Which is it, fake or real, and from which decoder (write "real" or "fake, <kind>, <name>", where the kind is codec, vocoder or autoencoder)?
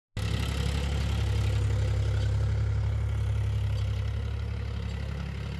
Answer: real